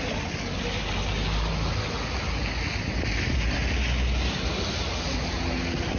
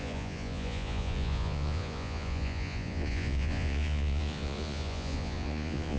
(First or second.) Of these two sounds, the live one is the first